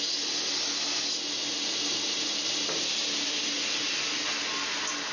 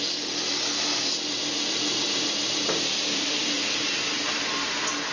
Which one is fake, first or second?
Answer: second